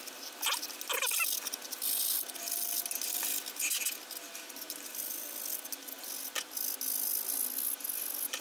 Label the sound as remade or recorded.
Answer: recorded